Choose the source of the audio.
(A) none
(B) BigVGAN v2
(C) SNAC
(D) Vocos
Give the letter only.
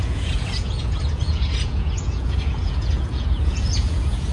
D